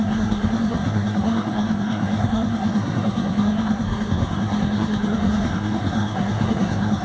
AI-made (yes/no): yes